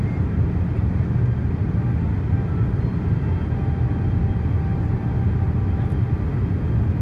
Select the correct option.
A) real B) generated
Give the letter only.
A